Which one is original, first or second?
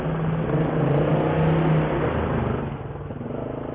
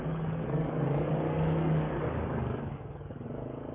first